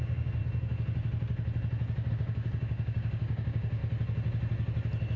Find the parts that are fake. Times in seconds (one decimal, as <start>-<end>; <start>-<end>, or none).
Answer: 0.0-0.4; 2.1-3.8